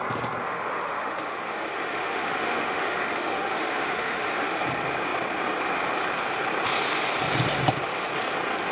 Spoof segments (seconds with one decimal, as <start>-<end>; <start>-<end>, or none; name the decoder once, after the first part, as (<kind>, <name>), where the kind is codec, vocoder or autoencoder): 0.4-4.6 (autoencoder, DAC-VAE)